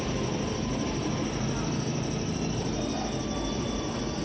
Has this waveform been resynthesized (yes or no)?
no